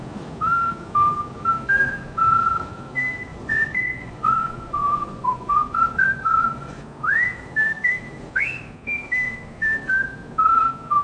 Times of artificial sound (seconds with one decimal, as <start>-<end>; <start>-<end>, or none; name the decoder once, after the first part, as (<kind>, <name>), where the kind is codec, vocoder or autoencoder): 3.3-6.8 (vocoder, Vocos)